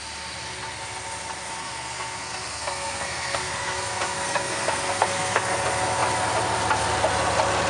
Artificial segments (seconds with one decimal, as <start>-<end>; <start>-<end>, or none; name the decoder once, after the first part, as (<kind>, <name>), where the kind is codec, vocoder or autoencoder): 1.6-5.5 (codec, SNAC)